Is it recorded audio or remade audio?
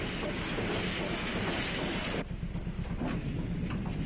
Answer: recorded